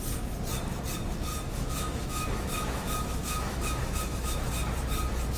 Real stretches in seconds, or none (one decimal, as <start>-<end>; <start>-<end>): 0.0-1.3; 4.5-5.4